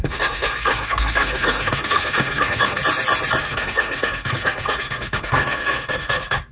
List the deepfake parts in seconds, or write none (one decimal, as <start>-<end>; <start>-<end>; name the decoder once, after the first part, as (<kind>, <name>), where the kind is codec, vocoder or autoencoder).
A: 0.0-2.8 (codec, SNAC); 3.4-6.5